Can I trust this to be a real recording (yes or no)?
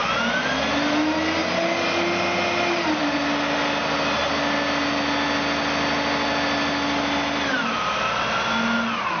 yes